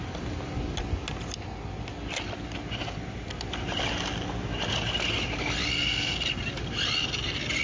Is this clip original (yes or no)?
yes